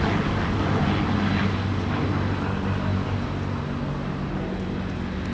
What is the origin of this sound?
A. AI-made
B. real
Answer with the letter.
B